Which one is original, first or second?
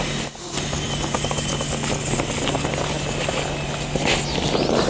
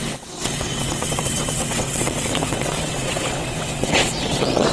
first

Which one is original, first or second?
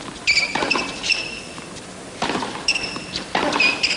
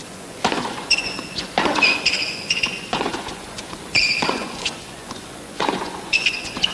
first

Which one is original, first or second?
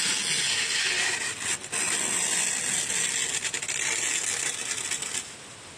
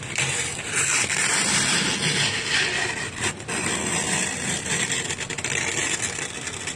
first